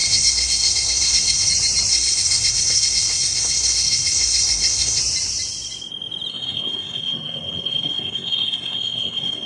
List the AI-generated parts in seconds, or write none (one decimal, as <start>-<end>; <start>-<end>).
0.0-1.5; 1.9-5.0; 6.3-9.5